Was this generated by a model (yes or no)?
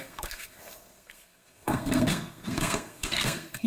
yes